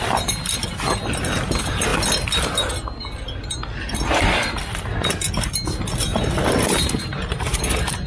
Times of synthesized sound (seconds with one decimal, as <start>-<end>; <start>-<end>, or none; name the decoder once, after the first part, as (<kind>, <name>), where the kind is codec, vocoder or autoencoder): 6.1-7.6 (vocoder, BigVGAN v2)